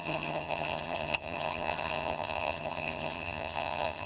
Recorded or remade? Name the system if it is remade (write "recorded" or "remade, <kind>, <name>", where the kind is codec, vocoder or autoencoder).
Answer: remade, vocoder, HiFi-GAN